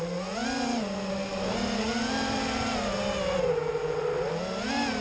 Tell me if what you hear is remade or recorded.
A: recorded